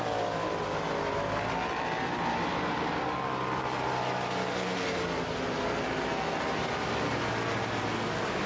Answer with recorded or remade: recorded